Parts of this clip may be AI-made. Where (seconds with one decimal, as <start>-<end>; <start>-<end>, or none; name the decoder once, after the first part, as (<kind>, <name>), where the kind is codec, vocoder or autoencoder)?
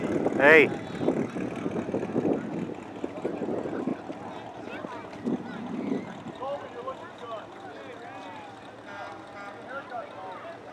none